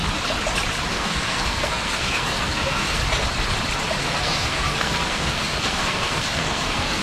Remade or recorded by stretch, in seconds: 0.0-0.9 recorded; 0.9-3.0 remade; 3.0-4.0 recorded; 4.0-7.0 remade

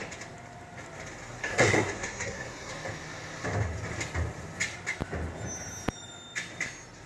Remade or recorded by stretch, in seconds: 0.0-1.4 recorded; 1.4-2.7 remade; 2.7-7.1 recorded

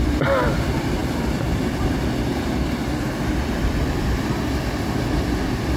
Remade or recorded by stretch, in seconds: 0.0-5.8 recorded

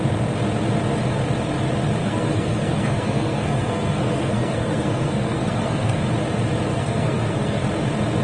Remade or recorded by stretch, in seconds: 0.0-2.0 recorded; 2.0-6.0 remade; 6.0-6.7 recorded; 6.7-7.6 remade; 7.6-8.2 recorded

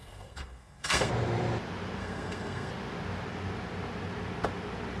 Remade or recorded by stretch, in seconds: 0.0-1.1 remade; 1.1-2.0 recorded; 2.0-2.7 remade; 2.7-5.0 recorded

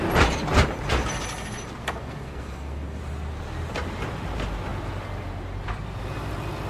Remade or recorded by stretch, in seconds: 0.0-1.8 recorded; 1.8-3.0 remade; 3.0-6.7 recorded

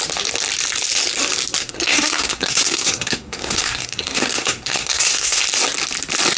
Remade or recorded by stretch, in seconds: 0.0-1.6 recorded; 1.6-5.4 remade; 5.4-6.4 recorded

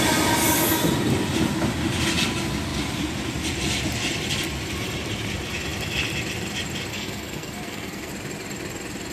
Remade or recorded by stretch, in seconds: 0.0-6.9 recorded; 6.9-8.1 remade; 8.1-9.1 recorded